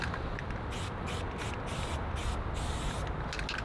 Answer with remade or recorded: recorded